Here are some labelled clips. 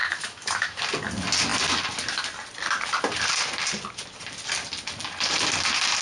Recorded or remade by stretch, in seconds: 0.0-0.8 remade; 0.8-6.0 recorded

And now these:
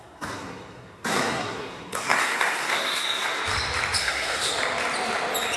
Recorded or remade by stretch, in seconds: 0.0-3.4 remade; 3.4-4.0 recorded; 4.0-4.5 remade; 4.5-5.6 recorded

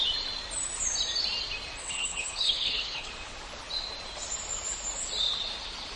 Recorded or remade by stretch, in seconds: 0.0-1.8 recorded; 1.8-3.1 remade; 3.1-6.0 recorded

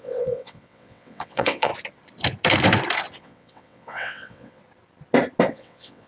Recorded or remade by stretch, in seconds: 0.0-1.7 remade; 1.7-3.2 recorded; 3.2-4.6 remade; 4.6-5.5 recorded; 5.5-6.1 remade

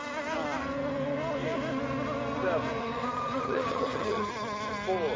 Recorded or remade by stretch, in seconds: 0.0-2.8 recorded; 2.8-4.3 remade; 4.3-5.2 recorded

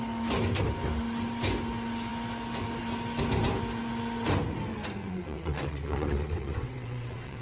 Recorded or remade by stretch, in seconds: 0.0-5.0 recorded; 5.0-7.4 remade